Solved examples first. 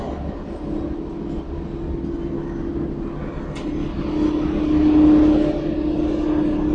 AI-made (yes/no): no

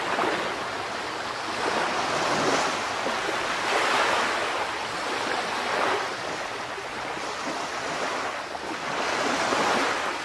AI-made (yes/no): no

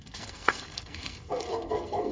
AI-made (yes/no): yes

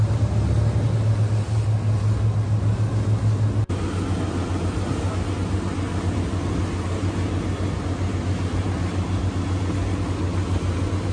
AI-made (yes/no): no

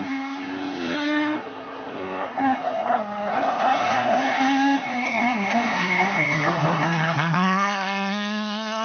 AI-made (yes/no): yes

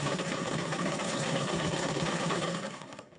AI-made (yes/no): yes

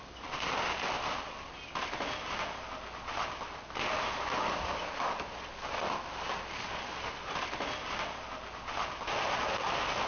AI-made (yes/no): no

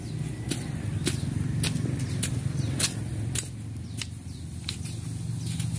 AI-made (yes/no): no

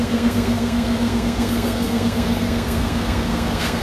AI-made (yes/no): yes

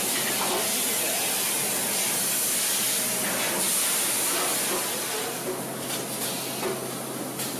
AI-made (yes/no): no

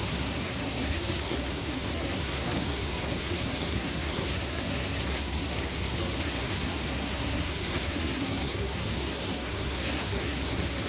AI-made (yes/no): yes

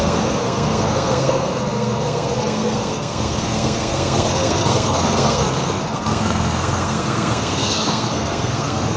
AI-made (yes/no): yes